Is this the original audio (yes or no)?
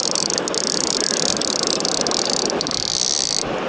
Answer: yes